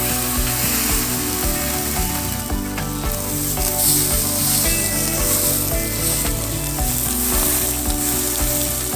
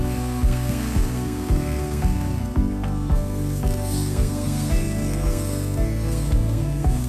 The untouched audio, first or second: first